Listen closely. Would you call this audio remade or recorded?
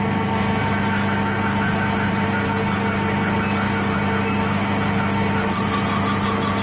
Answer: recorded